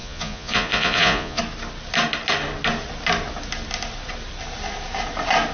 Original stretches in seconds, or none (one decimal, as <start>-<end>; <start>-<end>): 1.4-5.5